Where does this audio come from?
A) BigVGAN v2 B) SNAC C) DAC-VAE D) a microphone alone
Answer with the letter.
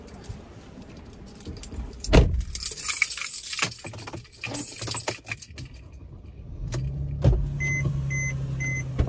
D